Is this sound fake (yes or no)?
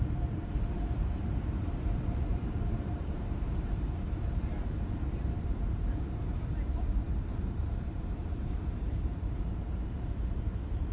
yes